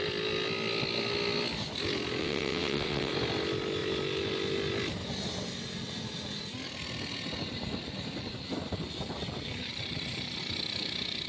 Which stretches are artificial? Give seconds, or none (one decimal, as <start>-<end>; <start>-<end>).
2.2-3.1